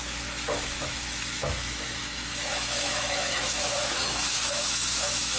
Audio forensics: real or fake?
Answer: fake